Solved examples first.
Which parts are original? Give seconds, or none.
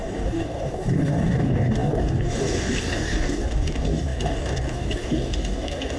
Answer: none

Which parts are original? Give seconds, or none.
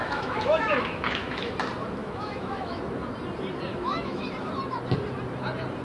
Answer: 1.5-2.0; 2.8-3.7; 4.2-5.8